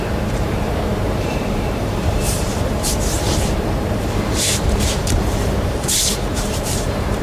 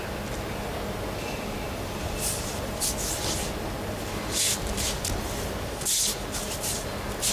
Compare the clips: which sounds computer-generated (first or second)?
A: first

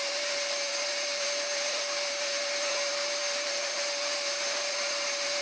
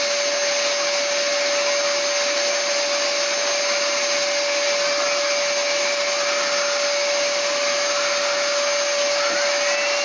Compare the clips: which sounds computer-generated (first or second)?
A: first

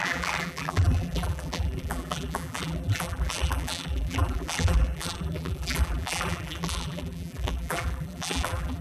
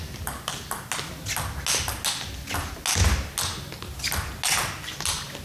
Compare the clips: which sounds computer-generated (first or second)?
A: first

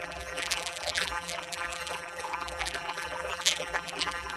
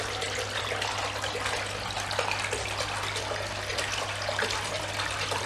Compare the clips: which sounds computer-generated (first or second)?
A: first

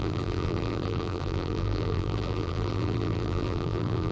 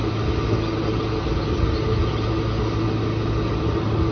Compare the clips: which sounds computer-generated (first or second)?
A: first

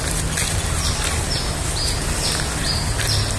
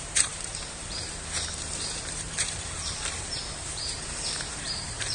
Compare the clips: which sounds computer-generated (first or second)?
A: second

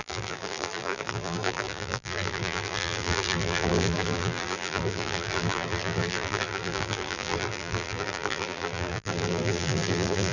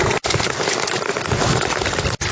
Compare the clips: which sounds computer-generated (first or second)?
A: first